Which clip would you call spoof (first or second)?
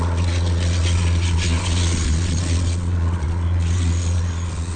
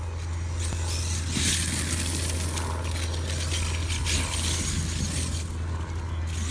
first